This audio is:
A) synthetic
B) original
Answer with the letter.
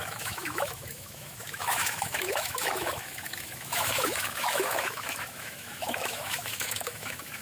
A